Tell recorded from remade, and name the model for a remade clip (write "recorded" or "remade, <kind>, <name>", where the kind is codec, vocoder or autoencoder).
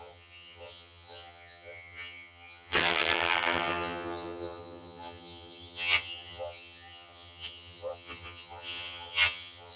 remade, vocoder, HiFi-GAN